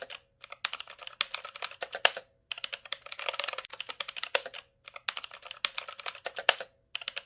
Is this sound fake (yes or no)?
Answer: no